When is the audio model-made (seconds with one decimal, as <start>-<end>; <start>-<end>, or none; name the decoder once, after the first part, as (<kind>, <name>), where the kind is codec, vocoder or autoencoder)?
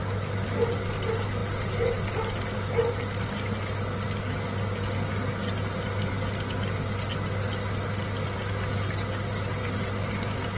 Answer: none